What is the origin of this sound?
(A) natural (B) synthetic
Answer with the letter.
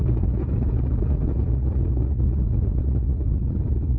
B